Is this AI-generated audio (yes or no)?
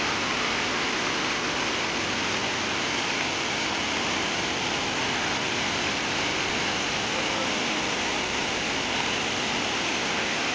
no